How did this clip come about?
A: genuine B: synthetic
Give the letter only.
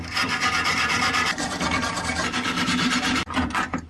B